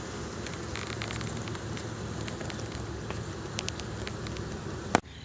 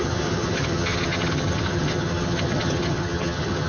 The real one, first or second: first